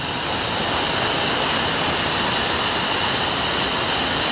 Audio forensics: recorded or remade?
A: recorded